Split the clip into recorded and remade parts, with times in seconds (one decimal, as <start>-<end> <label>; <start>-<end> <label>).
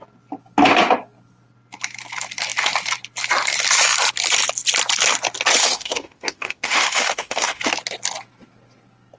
0.0-5.6 recorded; 5.6-7.6 remade; 7.6-9.2 recorded